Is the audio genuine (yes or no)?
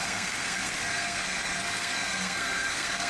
no